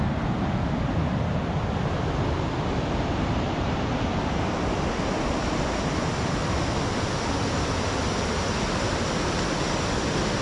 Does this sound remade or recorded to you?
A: recorded